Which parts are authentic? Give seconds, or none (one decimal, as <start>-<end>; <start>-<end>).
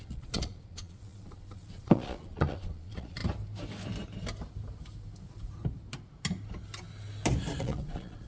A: 3.2-7.6